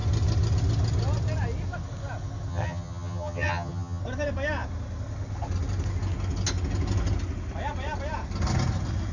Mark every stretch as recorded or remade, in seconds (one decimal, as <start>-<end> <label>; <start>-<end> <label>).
0.0-2.5 recorded; 2.5-4.0 remade; 4.0-9.1 recorded